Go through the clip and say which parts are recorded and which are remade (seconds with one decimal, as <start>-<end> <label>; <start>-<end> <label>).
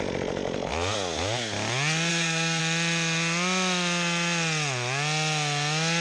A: 0.0-2.1 recorded; 2.1-2.6 remade; 2.6-6.0 recorded